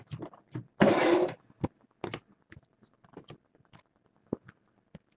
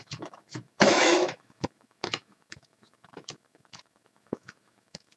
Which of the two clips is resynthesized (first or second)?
second